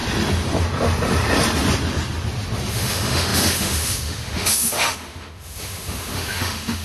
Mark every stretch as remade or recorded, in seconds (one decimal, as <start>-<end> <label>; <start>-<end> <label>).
0.0-2.7 recorded; 2.7-6.8 remade

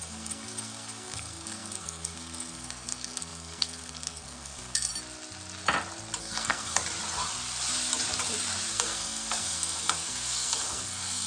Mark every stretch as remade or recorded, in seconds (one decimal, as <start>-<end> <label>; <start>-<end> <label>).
0.0-4.9 remade; 4.9-6.2 recorded; 6.2-6.8 remade; 6.8-8.7 recorded; 8.7-11.3 remade

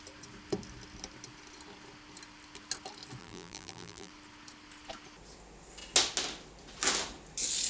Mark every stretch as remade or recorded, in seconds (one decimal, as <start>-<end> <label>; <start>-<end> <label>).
0.0-3.2 recorded; 3.2-4.1 remade; 4.1-7.7 recorded

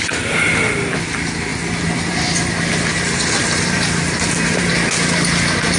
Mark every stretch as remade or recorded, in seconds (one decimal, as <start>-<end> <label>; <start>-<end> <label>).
0.0-2.9 recorded; 2.9-4.7 remade; 4.7-5.8 recorded

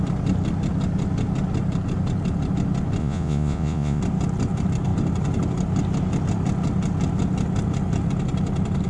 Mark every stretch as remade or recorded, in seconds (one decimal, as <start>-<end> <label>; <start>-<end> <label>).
0.0-3.0 recorded; 3.0-4.0 remade; 4.0-8.9 recorded